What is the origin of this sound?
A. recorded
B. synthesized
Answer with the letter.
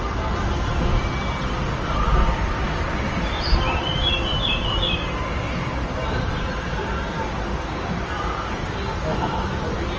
A